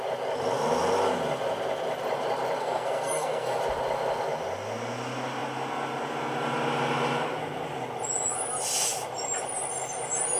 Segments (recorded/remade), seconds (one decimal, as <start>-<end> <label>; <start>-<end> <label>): 0.0-2.6 recorded; 2.6-3.6 remade; 3.6-10.4 recorded